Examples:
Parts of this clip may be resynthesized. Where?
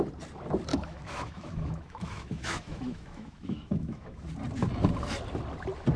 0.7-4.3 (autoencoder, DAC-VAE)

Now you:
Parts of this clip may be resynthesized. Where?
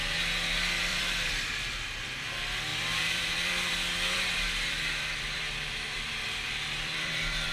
0.9-2.3 (vocoder, BigVGAN v2); 2.7-7.5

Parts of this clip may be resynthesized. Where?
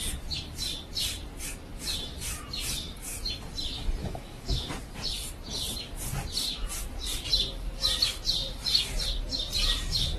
4.0-4.7 (autoencoder, DAC-VAE)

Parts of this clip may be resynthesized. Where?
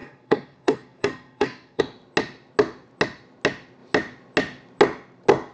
0.0-1.8 (codec, SNAC)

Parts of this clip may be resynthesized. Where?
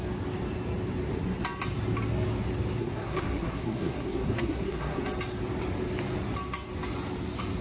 2.8-5.0 (codec, SNAC)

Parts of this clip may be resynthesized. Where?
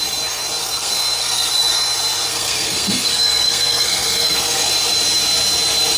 0.6-1.5 (codec, SNAC); 2.3-4.7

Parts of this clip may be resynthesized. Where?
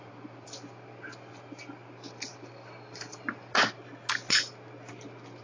none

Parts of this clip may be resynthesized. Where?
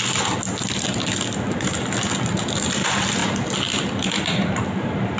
none